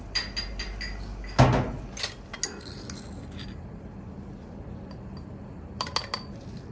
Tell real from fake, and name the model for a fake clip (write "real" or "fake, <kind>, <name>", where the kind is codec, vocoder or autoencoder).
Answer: real